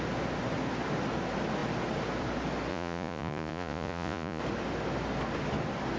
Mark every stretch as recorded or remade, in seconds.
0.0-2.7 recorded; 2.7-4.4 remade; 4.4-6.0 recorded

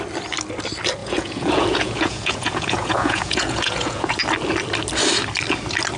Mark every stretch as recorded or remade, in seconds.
0.0-1.0 recorded; 1.0-4.2 remade; 4.2-6.0 recorded

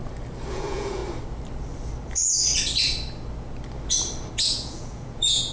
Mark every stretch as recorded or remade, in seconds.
0.0-0.5 recorded; 0.5-1.0 remade; 1.0-4.3 recorded; 4.3-5.5 remade